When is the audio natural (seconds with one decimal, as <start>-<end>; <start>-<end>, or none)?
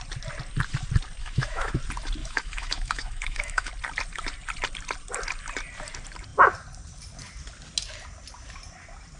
0.0-1.2; 1.7-2.2; 3.7-9.2